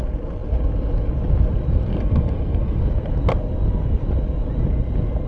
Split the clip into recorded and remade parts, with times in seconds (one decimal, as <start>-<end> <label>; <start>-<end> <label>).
0.0-1.9 recorded; 1.9-2.8 remade; 2.8-5.3 recorded